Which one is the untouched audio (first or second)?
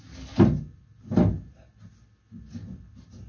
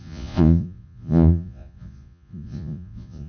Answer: first